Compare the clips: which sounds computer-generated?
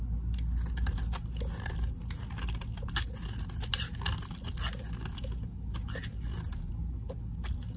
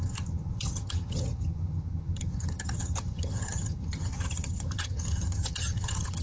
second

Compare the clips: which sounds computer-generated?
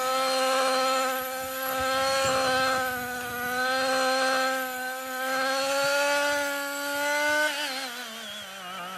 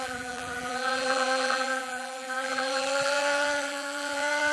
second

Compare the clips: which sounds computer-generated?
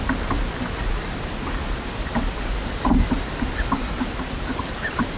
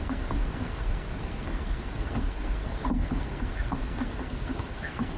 second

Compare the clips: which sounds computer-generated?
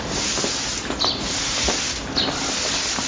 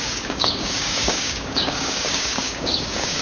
second